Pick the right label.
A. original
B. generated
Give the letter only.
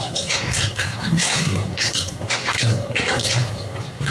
B